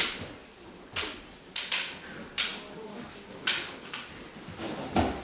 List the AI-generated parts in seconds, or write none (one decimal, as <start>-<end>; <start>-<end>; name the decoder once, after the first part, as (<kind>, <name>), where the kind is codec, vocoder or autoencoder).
none